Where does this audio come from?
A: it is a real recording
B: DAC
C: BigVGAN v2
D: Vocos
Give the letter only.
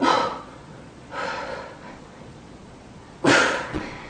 D